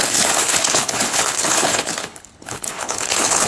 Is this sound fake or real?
fake